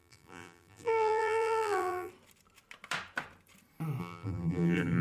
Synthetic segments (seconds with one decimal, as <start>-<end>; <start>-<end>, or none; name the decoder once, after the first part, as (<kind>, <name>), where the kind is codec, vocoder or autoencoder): 0.0-2.1 (vocoder, BigVGAN v2); 4.0-5.0